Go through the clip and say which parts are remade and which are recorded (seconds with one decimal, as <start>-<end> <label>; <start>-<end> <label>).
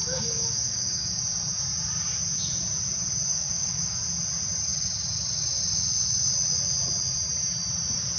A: 0.0-1.2 remade; 1.2-3.3 recorded; 3.3-4.0 remade; 4.0-8.2 recorded